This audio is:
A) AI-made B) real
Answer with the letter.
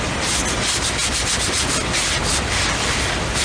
B